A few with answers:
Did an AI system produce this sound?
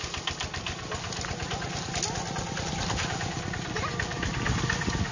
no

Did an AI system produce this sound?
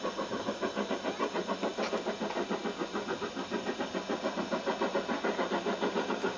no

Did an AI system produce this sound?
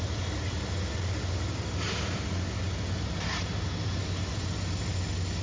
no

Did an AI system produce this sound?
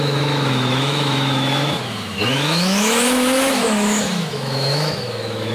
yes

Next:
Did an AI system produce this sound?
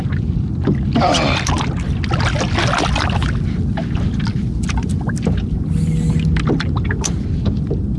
no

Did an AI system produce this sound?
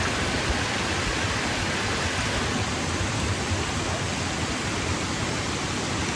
no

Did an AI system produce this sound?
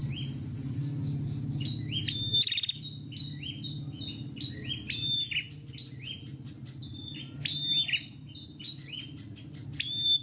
no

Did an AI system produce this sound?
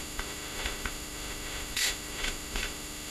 yes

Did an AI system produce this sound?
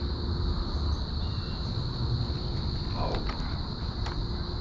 no